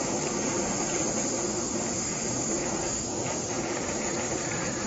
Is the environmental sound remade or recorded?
remade